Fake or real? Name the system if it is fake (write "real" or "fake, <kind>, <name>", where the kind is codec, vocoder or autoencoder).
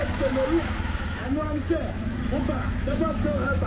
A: fake, autoencoder, DAC-VAE